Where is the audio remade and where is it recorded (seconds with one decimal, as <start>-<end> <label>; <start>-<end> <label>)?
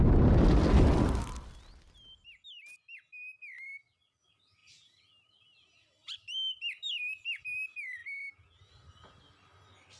0.0-10.0 recorded